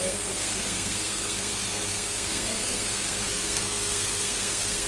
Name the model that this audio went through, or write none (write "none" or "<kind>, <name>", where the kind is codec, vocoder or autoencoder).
codec, SNAC